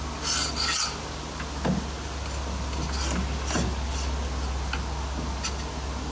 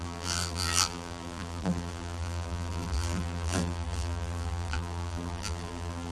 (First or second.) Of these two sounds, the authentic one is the first